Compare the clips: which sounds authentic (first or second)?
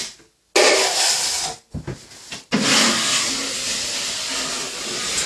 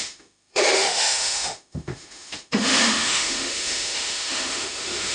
first